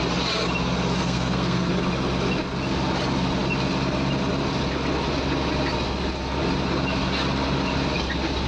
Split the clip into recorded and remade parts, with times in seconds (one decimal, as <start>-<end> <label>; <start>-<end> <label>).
0.0-1.0 recorded; 1.0-1.7 remade; 1.7-8.5 recorded